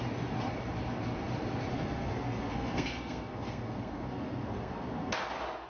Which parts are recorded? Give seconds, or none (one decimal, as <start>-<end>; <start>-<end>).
0.0-1.7; 5.1-5.7